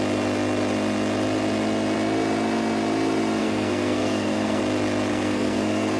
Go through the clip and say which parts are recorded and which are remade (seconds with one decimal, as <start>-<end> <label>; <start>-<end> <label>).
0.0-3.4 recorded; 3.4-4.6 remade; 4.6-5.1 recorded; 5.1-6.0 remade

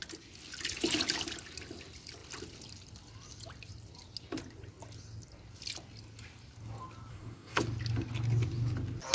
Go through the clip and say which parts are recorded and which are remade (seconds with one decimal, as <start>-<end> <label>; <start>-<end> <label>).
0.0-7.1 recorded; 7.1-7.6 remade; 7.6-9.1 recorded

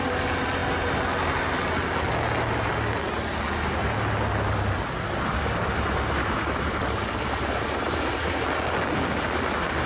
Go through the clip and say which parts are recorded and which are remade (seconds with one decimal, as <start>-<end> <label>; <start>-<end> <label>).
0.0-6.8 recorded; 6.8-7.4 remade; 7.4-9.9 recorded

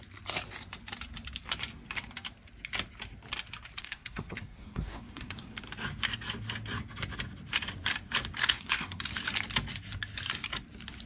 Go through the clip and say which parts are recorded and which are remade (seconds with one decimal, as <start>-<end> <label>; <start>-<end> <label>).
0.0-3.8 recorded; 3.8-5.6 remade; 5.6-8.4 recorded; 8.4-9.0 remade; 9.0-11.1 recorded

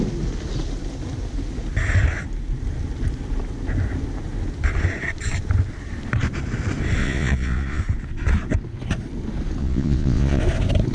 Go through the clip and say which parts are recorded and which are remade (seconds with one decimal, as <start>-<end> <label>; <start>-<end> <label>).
0.0-7.0 recorded; 7.0-7.8 remade; 7.8-9.6 recorded; 9.6-10.4 remade; 10.4-10.9 recorded

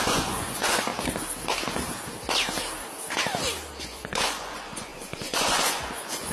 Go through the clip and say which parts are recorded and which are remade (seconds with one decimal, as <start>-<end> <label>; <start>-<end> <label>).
0.0-0.9 remade; 0.9-3.8 recorded; 3.8-6.3 remade